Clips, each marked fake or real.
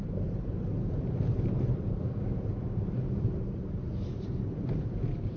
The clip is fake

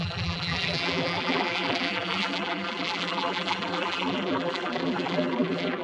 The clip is fake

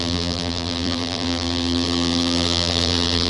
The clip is fake